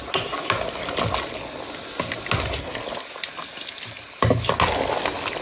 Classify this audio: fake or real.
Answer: real